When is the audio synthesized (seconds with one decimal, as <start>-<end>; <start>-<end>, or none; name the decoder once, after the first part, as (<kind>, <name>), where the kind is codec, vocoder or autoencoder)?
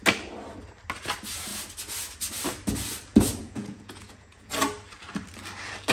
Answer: 3.4-4.5 (vocoder, Vocos)